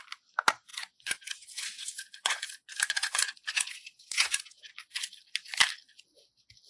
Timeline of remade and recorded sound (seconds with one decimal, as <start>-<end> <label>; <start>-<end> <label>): 0.0-0.7 recorded; 0.7-4.7 remade; 4.7-6.7 recorded